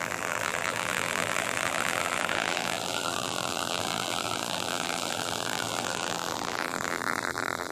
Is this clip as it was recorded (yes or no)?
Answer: no